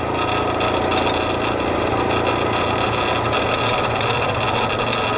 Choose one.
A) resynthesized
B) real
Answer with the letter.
B